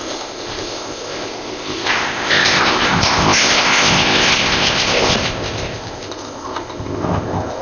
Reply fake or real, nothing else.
fake